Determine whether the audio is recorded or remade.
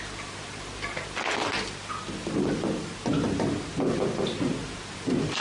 recorded